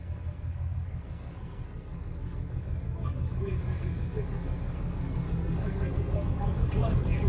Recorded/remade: remade